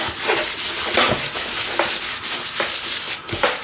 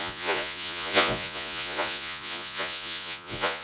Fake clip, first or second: second